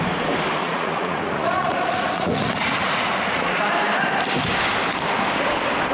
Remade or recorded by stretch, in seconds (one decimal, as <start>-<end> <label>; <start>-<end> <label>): 0.0-0.6 recorded; 0.6-3.6 remade; 3.6-5.9 recorded